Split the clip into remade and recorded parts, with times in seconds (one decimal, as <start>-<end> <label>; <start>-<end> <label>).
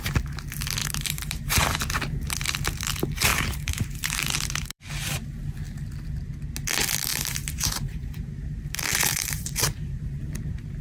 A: 0.0-0.8 recorded; 0.8-1.8 remade; 1.8-3.3 recorded; 3.3-4.8 remade; 4.8-7.1 recorded; 7.1-10.3 remade; 10.3-10.8 recorded